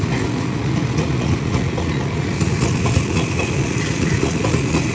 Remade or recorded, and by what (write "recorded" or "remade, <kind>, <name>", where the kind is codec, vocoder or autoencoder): remade, vocoder, Vocos